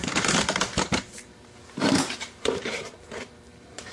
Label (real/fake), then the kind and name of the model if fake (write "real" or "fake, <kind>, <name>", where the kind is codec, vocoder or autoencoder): fake, vocoder, BigVGAN v2